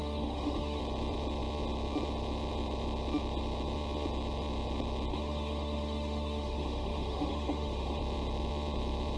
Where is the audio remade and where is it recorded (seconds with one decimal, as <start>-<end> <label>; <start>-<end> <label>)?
0.0-0.8 remade; 0.8-5.1 recorded; 5.1-8.0 remade; 8.0-9.2 recorded